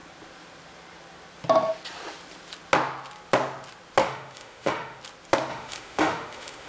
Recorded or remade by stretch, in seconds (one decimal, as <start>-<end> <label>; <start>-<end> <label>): 0.0-4.0 recorded; 4.0-5.0 remade; 5.0-5.5 recorded; 5.5-6.7 remade